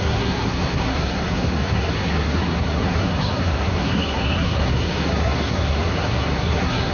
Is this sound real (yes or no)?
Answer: no